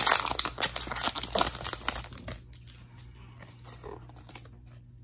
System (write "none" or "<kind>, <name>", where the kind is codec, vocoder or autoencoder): none